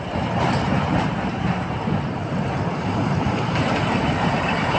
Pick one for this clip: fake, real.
fake